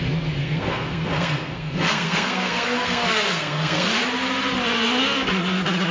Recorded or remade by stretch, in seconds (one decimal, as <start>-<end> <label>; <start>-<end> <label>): 0.0-0.4 recorded; 0.4-3.9 remade; 3.9-5.9 recorded